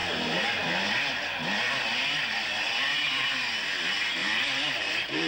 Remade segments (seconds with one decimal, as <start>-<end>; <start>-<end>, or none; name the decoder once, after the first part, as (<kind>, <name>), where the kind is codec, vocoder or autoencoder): 4.2-5.3 (vocoder, BigVGAN v2)